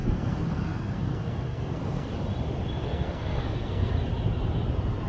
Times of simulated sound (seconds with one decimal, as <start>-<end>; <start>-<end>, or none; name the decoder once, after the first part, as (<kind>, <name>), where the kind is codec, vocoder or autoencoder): 0.0-2.1 (codec, SNAC); 2.8-3.9